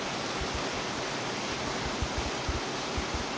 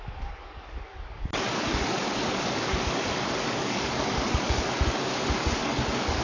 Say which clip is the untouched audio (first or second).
first